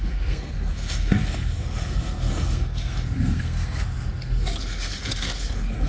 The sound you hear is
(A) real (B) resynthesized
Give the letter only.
B